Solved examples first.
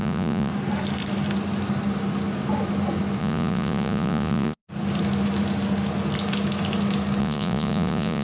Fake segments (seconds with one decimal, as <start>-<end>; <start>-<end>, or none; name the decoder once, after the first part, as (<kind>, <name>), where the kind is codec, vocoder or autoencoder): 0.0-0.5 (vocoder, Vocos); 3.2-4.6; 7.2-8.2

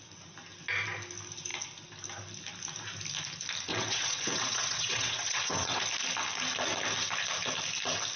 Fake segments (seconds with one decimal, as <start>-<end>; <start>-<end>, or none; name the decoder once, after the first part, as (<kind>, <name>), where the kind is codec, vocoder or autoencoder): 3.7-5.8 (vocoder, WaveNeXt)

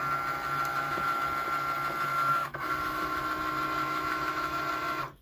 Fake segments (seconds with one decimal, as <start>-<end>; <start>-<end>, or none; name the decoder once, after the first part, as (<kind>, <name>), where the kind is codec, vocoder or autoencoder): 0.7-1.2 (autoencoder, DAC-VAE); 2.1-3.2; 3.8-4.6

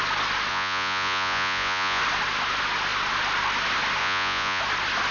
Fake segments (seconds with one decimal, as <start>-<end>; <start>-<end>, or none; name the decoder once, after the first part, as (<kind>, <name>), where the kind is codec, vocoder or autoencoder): 0.5-2.0 (vocoder, Vocos); 4.0-4.6